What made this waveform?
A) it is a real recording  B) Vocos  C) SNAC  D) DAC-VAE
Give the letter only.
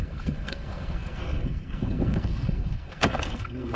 C